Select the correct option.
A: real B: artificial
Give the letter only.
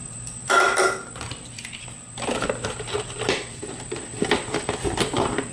B